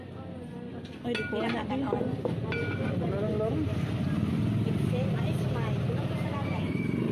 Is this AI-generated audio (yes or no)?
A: no